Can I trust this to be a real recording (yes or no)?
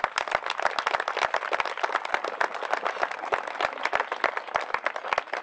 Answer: yes